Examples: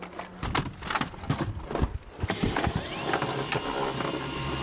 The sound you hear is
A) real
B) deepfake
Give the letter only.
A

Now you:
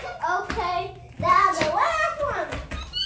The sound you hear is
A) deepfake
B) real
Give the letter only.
B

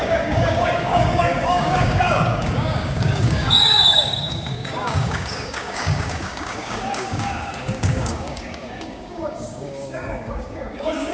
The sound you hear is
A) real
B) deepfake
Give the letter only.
B